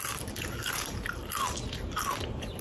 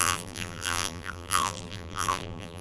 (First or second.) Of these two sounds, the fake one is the second